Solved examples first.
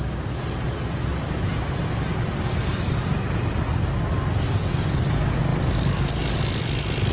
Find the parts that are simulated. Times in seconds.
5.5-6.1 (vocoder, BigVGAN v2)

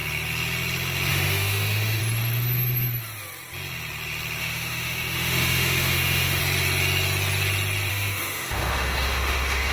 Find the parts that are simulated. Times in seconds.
1.1-2.0 (autoencoder, DAC-VAE); 4.4-6.4; 7.9-9.7